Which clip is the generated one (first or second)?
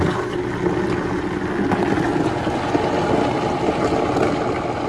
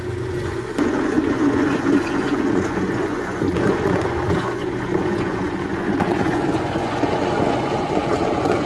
second